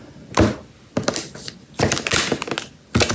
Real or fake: real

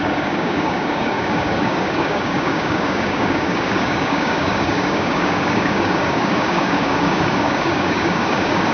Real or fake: fake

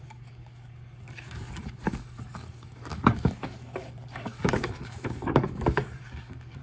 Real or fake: fake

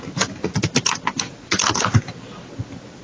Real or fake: real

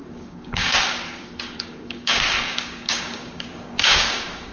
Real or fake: fake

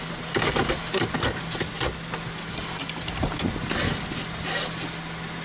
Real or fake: real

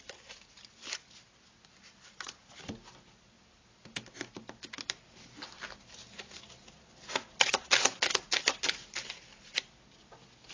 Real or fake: real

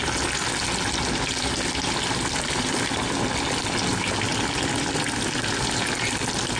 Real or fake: real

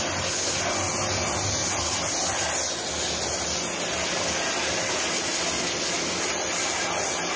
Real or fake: real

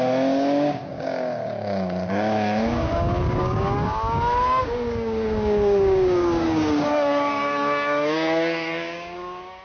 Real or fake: fake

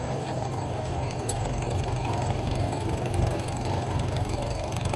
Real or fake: fake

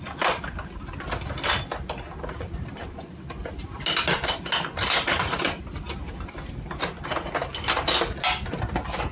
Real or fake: real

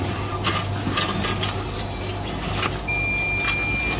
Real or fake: real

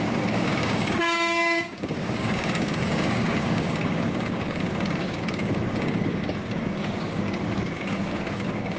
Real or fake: fake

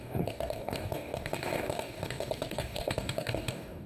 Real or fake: fake